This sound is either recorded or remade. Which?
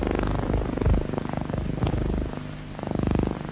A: recorded